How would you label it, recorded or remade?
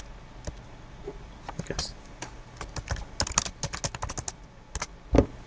recorded